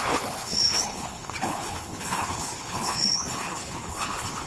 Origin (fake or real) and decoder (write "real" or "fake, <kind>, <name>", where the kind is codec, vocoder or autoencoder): fake, codec, HILCodec